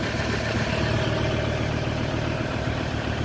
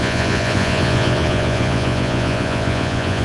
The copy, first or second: second